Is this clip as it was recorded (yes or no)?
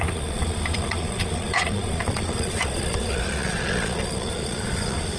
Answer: no